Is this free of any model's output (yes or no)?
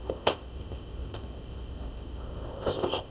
no